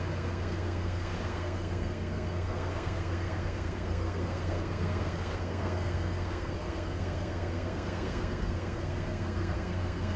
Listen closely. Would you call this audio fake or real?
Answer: fake